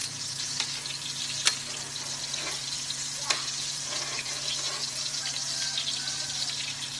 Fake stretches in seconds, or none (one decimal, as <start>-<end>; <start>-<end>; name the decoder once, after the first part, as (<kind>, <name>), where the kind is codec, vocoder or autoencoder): 0.0-0.6 (vocoder, Vocos); 2.2-5.2